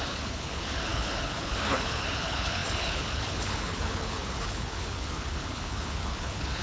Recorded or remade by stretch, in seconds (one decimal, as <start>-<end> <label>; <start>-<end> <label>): 0.0-6.6 remade